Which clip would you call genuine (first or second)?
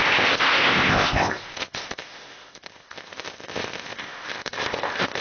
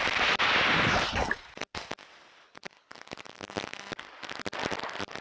second